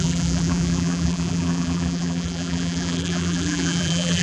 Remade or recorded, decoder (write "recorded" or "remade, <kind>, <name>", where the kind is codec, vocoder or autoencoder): remade, vocoder, BigVGAN v2